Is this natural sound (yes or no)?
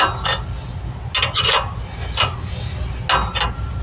yes